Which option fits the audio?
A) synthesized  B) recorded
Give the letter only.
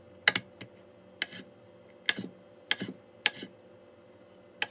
B